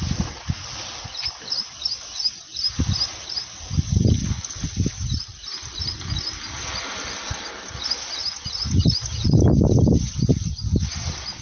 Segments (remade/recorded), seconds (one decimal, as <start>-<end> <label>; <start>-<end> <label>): 0.0-11.4 recorded